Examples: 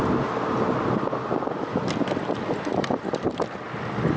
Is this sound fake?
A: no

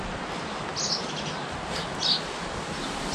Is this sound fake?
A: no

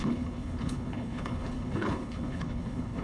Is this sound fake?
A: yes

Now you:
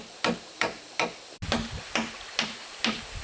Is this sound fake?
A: no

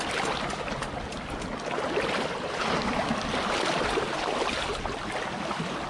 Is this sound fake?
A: no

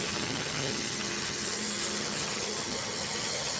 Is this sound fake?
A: yes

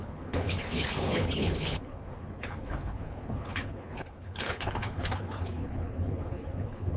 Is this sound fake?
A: yes